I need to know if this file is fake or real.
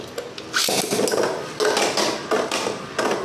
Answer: real